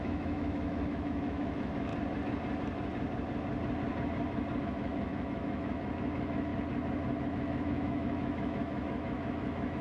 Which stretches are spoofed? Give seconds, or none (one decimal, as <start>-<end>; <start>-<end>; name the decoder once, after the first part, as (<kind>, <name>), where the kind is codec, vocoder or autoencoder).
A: 0.0-1.9 (autoencoder, DAC-VAE); 4.6-6.5; 7.2-9.8